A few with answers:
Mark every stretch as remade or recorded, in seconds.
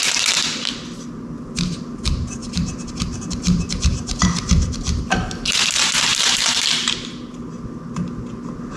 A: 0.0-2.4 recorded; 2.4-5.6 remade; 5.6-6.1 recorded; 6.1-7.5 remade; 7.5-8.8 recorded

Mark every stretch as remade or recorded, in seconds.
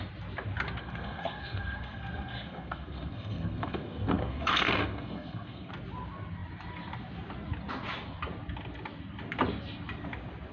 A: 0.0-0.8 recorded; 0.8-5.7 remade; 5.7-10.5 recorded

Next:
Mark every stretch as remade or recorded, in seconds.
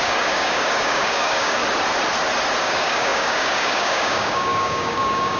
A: 0.0-1.6 remade; 1.6-2.6 recorded; 2.6-5.4 remade